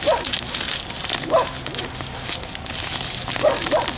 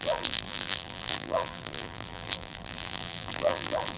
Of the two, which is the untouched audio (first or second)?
first